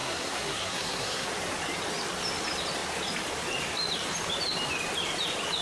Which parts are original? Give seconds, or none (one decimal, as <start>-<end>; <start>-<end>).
1.3-5.6